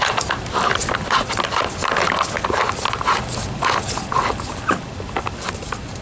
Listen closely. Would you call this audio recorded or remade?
recorded